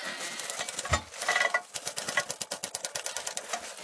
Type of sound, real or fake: real